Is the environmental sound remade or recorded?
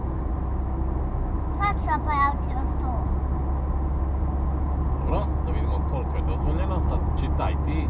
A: recorded